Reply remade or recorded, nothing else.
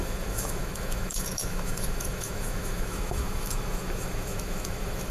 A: remade